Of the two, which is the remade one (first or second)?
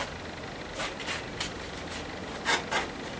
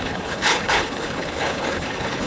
second